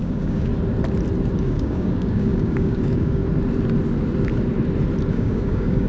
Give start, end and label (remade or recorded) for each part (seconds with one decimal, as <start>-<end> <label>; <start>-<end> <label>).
0.0-0.5 remade; 0.5-1.4 recorded; 1.4-3.2 remade; 3.2-5.1 recorded; 5.1-5.9 remade